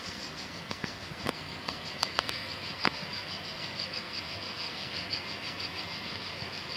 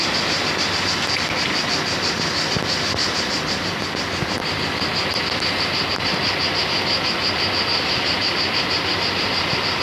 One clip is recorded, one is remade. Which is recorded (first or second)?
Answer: second